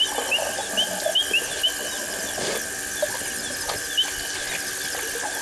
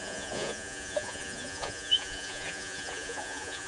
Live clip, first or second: first